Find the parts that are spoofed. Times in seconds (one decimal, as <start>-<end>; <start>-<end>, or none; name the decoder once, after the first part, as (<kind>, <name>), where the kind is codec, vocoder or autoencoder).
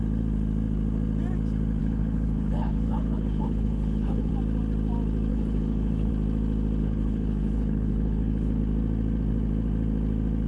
1.8-4.3 (codec, HILCodec); 5.3-6.1; 6.8-8.6